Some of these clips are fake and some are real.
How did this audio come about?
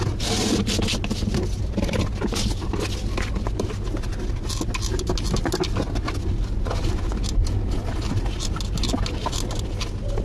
real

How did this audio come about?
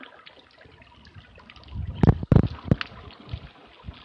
real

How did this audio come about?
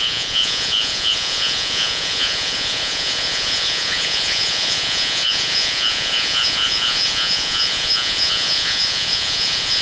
fake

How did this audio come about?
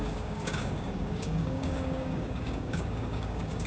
fake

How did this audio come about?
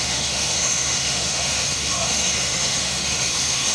fake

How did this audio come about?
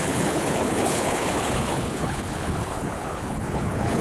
fake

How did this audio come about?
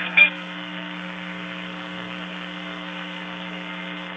fake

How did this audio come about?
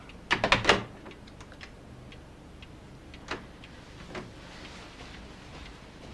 real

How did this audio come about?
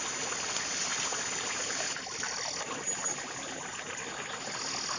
real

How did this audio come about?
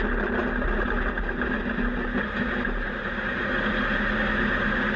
real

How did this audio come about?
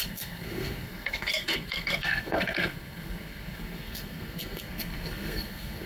fake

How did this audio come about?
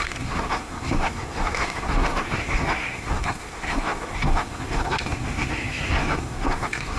fake